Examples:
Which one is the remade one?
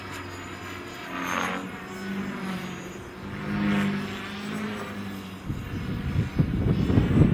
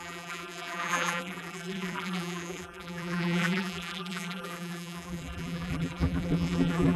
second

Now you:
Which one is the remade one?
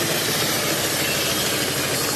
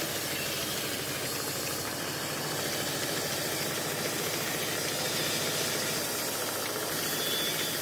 second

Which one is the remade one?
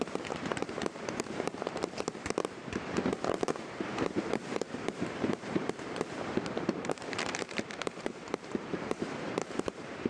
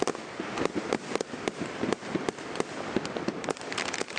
first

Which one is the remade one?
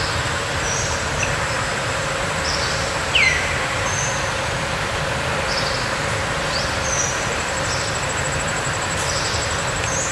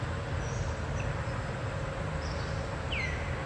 first